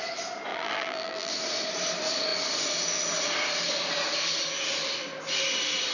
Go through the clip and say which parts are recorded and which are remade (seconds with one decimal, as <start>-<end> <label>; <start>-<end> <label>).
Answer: 0.0-0.5 recorded; 0.5-1.3 remade; 1.3-5.9 recorded

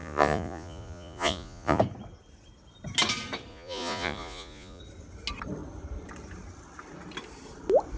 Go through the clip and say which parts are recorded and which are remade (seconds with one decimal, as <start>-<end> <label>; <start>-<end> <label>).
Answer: 0.0-1.8 remade; 1.8-3.5 recorded; 3.5-4.8 remade; 4.8-8.0 recorded

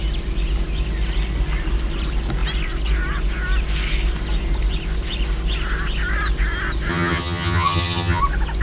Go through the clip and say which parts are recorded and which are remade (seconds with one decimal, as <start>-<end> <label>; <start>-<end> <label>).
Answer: 0.0-6.9 recorded; 6.9-8.2 remade; 8.2-8.6 recorded

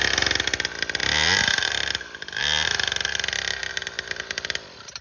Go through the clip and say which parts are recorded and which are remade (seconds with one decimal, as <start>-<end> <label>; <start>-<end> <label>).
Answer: 0.0-5.0 recorded

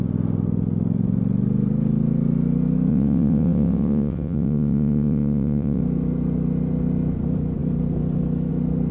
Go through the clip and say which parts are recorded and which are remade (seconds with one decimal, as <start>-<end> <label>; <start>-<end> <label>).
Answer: 0.0-2.9 recorded; 2.9-5.8 remade; 5.8-8.9 recorded